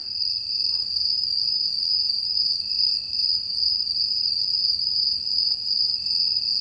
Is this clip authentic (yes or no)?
no